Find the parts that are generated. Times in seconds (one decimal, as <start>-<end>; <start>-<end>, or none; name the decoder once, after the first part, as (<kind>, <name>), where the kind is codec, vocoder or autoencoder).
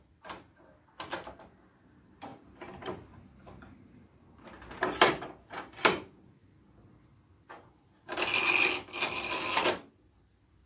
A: 2.3-5.2 (vocoder, BigVGAN v2)